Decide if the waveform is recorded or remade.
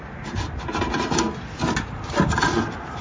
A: recorded